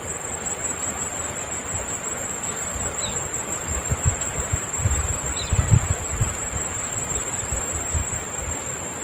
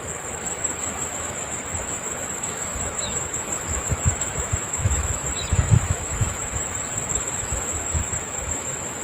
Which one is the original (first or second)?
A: first